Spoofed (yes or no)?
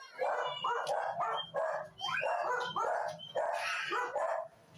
no